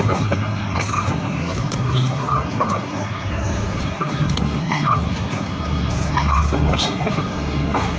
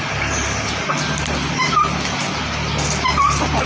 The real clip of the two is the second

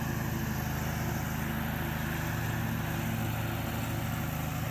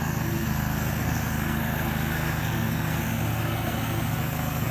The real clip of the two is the first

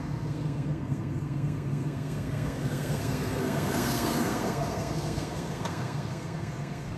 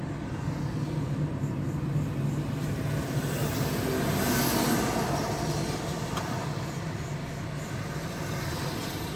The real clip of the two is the second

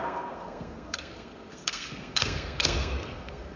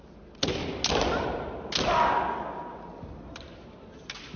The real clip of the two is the second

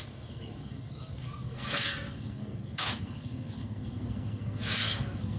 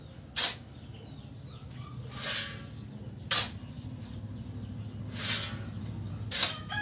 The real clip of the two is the second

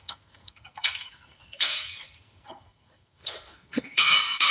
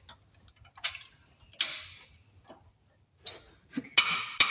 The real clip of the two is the second